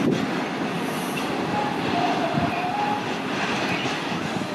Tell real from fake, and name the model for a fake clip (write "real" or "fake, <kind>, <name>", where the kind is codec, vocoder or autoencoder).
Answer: real